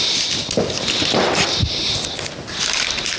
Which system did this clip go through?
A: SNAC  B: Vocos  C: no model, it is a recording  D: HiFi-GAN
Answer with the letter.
C